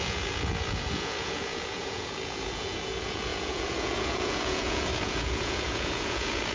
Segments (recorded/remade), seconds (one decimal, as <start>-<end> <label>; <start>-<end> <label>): 0.0-6.5 remade